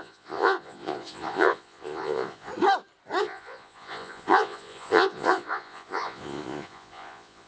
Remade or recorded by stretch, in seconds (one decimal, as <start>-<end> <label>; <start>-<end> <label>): 0.0-2.5 remade; 2.5-3.2 recorded; 3.2-7.5 remade